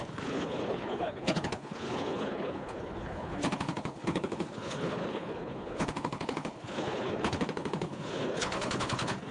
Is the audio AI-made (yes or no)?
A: yes